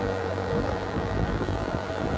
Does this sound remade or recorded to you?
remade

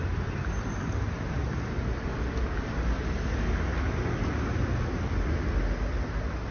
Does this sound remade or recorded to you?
recorded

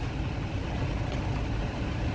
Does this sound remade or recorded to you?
recorded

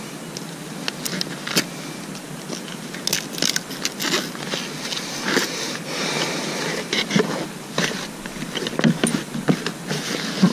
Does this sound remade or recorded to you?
recorded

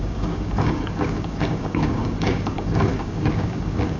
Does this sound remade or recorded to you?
remade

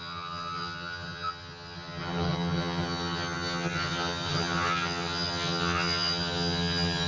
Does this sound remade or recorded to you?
remade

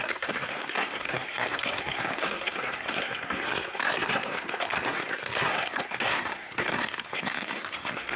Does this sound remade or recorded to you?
remade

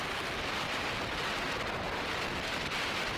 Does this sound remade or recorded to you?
recorded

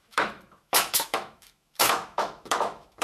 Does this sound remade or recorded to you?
remade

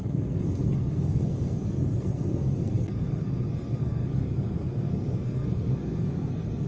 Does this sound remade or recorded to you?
remade